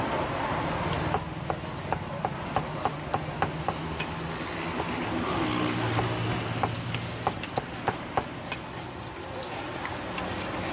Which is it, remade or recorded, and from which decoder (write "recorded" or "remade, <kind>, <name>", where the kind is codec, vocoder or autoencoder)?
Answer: recorded